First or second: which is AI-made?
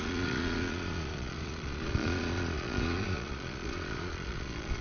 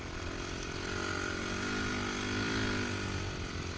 first